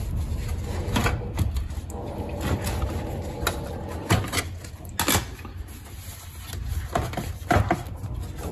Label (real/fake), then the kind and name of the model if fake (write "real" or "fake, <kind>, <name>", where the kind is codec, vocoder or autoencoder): real